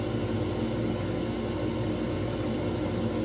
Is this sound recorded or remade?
recorded